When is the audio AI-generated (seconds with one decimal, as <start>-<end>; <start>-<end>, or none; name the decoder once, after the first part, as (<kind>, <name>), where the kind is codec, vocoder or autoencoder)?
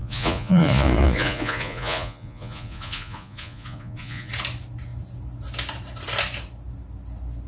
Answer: 0.0-4.3 (vocoder, Vocos)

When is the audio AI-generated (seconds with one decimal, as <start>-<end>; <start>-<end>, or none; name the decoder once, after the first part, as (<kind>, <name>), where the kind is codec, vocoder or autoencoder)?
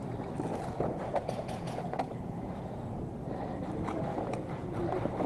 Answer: 0.5-3.0 (vocoder, Vocos); 4.1-4.8